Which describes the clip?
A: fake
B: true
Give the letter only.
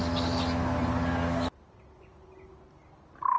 B